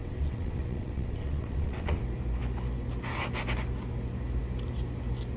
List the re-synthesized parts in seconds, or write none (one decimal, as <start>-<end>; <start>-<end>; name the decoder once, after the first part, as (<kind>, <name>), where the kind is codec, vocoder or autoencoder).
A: 0.0-2.0 (vocoder, WaveNeXt)